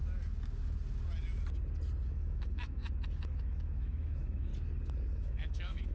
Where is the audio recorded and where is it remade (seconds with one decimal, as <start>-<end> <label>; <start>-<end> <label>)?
0.0-2.1 recorded; 2.1-2.8 remade; 2.8-3.4 recorded; 3.4-4.5 remade; 4.5-5.2 recorded; 5.2-5.9 remade

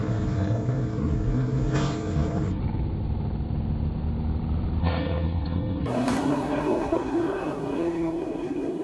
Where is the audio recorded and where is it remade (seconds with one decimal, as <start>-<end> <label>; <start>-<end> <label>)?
0.0-2.6 remade; 2.6-4.8 recorded; 4.8-8.8 remade

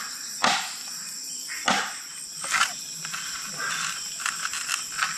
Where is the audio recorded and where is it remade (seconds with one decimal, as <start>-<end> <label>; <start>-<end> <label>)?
0.0-5.2 recorded

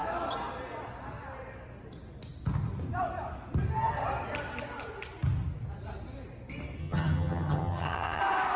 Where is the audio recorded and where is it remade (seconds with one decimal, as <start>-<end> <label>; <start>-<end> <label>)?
0.0-6.8 recorded; 6.8-8.2 remade; 8.2-8.6 recorded

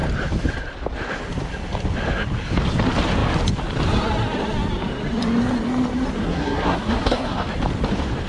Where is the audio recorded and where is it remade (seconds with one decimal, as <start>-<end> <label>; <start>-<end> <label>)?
0.0-6.2 recorded; 6.2-7.5 remade; 7.5-8.3 recorded

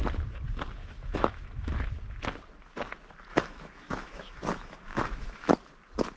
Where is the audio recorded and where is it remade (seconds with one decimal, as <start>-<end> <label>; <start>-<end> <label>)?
0.0-0.8 recorded; 0.8-1.7 remade; 1.7-3.3 recorded; 3.3-5.5 remade; 5.5-6.2 recorded

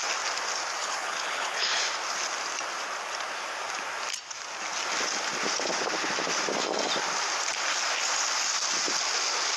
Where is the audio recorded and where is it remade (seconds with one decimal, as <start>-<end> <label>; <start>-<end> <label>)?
0.0-0.8 recorded; 0.8-1.8 remade; 1.8-9.6 recorded

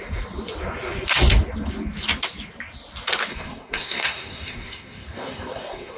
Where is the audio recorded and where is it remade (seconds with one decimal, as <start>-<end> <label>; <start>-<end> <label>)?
0.0-3.3 recorded; 3.3-6.0 remade